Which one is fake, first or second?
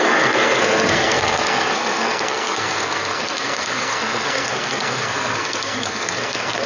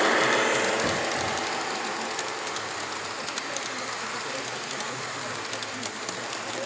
first